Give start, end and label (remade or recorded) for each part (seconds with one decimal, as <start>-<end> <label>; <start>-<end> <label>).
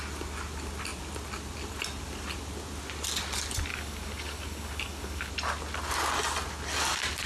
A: 0.0-3.7 recorded; 3.7-5.3 remade; 5.3-7.3 recorded